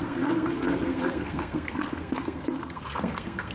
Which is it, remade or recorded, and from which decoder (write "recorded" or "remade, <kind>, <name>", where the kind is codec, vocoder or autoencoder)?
remade, codec, SNAC